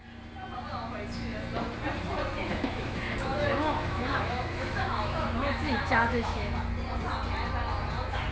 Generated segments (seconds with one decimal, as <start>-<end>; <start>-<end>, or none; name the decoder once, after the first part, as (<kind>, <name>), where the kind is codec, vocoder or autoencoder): 2.4-6.5 (autoencoder, DAC-VAE)